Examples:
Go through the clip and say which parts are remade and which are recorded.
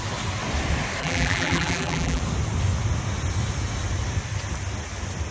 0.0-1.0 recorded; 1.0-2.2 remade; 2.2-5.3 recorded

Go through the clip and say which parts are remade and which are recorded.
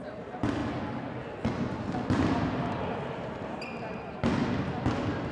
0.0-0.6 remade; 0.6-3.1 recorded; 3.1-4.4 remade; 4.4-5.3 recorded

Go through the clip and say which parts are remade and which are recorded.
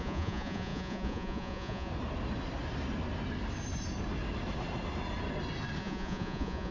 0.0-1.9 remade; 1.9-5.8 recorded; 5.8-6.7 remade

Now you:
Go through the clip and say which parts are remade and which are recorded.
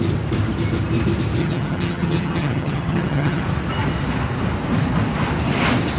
0.0-1.4 recorded; 1.4-3.4 remade; 3.4-6.0 recorded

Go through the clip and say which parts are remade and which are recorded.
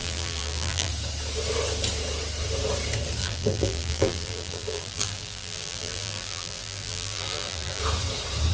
0.0-0.9 remade; 0.9-3.2 recorded; 3.2-7.8 remade; 7.8-8.5 recorded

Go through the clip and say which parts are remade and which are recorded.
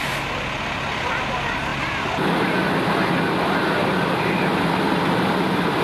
0.0-5.8 recorded